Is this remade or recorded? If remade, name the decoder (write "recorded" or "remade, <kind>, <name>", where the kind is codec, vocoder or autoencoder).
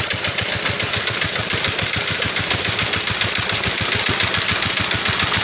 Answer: recorded